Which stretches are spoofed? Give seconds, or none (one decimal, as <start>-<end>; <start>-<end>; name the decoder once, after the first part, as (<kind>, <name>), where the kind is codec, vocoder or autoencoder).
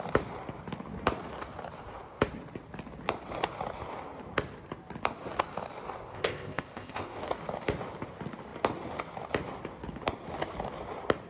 6.1-7.2 (codec, ZipCodec)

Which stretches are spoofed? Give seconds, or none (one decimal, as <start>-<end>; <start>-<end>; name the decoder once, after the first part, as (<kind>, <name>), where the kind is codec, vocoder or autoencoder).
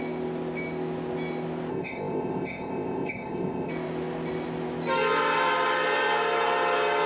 1.7-3.7 (codec, ZipCodec)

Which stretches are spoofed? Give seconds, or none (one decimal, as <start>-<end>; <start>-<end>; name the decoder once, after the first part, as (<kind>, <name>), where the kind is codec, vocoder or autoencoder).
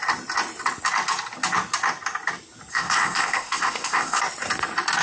2.7-4.2 (codec, ZipCodec)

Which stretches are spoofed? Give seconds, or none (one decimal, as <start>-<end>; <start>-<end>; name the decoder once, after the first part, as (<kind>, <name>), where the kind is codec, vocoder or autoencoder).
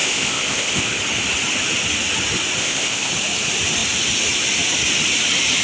0.0-1.0 (codec, ZipCodec); 2.6-3.1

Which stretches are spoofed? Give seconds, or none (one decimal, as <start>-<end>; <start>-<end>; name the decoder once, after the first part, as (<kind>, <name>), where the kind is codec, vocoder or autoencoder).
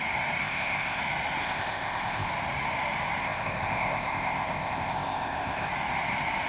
0.4-1.0 (codec, ZipCodec); 1.4-2.3; 3.2-5.7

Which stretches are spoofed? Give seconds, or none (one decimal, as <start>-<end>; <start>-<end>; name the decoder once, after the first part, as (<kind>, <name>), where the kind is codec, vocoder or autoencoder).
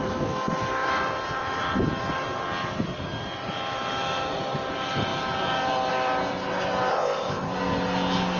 6.9-7.5 (codec, ZipCodec)